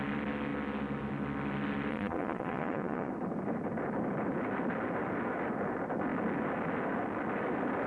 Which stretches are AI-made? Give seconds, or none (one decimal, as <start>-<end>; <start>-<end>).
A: 1.9-3.1